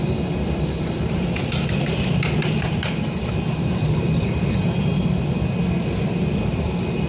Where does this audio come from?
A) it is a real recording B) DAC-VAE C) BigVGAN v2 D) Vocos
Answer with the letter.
A